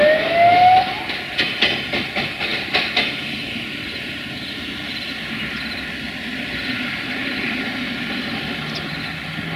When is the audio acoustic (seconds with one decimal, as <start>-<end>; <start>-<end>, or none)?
0.0-9.6

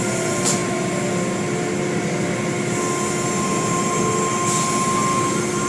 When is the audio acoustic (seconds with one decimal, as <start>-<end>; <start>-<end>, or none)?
0.0-5.7

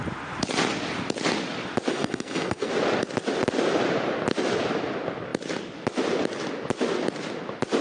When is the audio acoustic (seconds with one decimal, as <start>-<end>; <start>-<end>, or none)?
0.0-1.9; 2.7-7.8

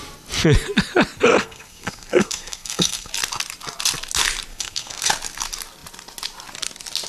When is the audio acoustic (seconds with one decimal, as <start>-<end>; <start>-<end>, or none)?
0.0-1.4; 3.1-4.5; 5.1-7.1

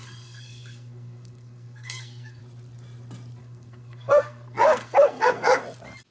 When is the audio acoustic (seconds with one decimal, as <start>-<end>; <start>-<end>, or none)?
2.4-3.4; 5.6-6.1

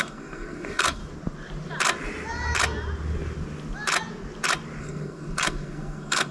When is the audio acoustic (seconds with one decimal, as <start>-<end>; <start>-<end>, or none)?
1.0-4.8

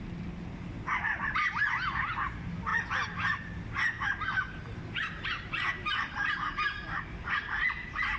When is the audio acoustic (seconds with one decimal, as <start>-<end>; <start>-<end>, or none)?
0.0-8.2

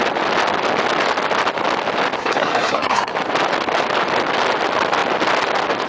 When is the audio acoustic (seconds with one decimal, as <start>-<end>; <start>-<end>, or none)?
0.0-2.2; 3.1-5.9